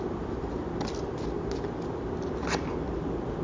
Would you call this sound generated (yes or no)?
no